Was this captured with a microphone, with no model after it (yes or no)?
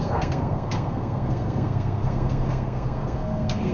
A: no